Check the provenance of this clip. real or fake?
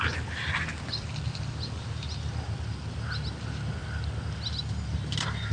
real